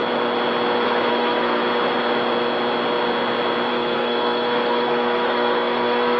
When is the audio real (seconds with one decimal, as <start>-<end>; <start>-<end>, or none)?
0.0-1.1; 1.6-3.7